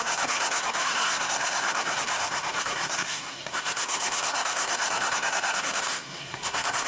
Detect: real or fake fake